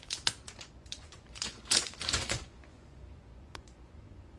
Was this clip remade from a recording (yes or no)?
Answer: yes